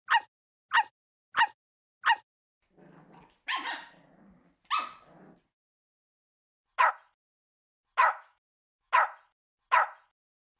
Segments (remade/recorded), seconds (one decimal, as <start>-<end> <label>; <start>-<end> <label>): 0.0-8.0 recorded; 8.0-8.9 remade; 8.9-10.6 recorded